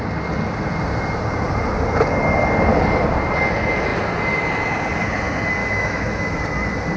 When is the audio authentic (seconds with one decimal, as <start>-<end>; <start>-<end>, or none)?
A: 0.0-5.6; 6.4-7.0